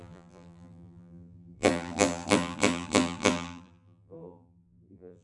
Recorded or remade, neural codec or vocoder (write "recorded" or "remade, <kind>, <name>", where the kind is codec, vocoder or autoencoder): remade, vocoder, BigVGAN v2